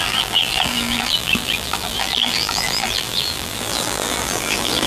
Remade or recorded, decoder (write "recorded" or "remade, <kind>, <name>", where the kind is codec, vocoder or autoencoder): remade, vocoder, BigVGAN v2